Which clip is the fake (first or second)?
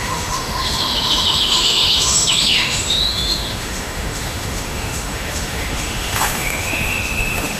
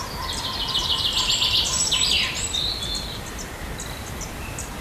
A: first